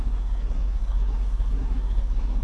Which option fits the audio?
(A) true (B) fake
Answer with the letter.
B